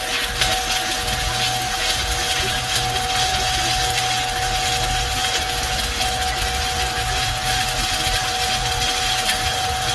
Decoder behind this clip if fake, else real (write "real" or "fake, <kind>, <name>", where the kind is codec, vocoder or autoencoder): real